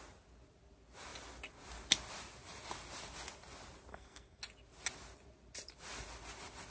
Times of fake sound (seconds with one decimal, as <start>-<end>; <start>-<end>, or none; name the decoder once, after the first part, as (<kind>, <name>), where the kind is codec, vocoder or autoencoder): 3.9-4.4 (codec, SNAC)